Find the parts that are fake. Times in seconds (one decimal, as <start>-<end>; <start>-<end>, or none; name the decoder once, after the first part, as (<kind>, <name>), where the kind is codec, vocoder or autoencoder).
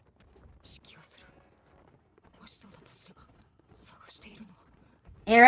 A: 2.1-5.5 (vocoder, Vocos)